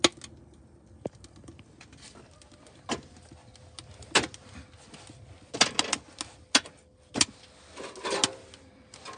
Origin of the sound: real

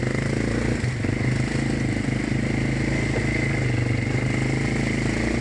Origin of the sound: real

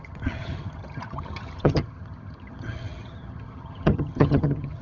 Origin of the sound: fake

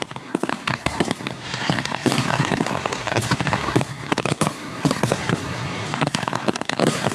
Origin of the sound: fake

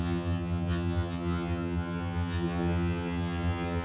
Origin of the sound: fake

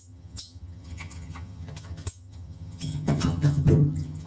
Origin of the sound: fake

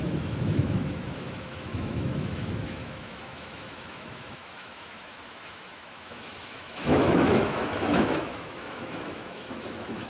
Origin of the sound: fake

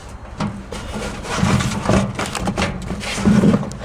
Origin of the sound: fake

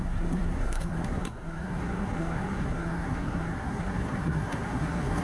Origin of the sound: fake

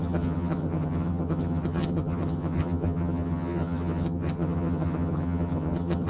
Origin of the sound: fake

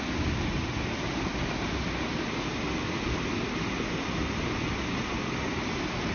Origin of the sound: real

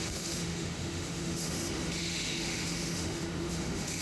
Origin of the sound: fake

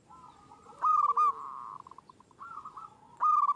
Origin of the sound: real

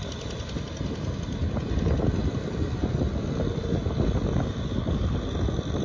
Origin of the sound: real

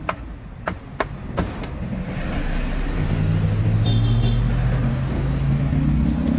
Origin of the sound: real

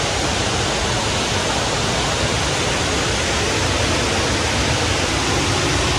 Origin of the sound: real